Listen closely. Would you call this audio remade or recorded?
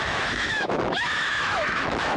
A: remade